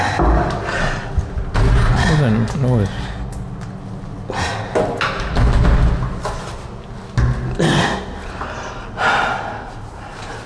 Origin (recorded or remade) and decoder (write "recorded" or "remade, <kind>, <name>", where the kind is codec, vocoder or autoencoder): recorded